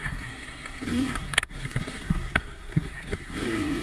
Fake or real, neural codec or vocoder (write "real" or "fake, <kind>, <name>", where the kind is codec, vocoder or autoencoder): fake, codec, SNAC